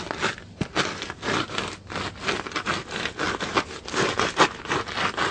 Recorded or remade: recorded